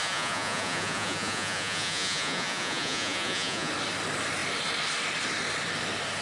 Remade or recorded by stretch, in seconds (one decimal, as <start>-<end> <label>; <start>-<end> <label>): 0.0-3.7 remade; 3.7-6.2 recorded